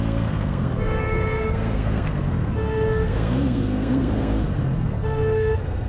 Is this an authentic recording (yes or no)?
no